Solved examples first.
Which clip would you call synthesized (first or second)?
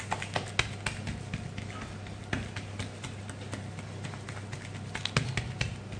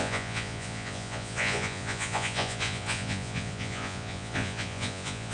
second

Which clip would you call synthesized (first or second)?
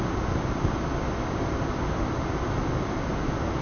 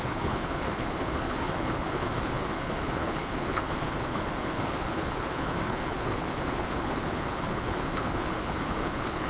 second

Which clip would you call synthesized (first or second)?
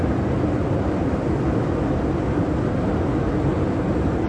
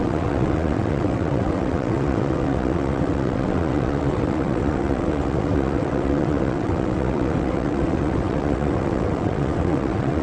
second